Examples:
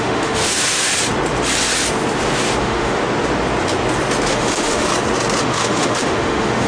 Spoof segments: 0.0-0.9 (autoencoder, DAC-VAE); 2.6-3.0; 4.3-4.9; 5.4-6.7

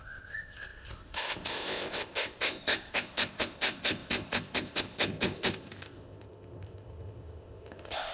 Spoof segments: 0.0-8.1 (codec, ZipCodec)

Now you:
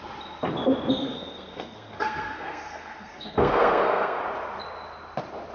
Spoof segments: 1.0-4.2 (codec, SNAC)